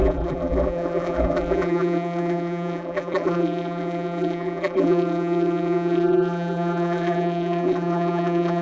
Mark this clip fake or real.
fake